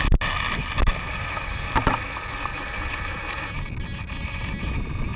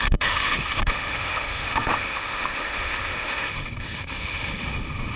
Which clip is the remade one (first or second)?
second